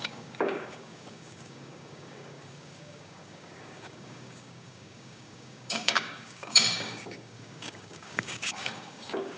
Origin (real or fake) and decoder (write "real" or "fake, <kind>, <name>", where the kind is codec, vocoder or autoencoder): fake, codec, DAC